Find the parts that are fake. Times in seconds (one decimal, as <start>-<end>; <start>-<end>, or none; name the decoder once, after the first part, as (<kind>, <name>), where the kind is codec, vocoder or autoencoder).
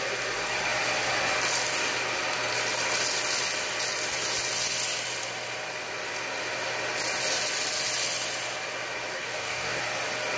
9.1-9.8 (codec, DAC)